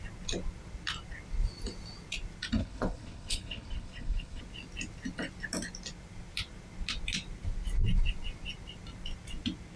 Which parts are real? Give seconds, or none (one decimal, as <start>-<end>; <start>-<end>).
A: 0.0-2.6; 4.4-9.8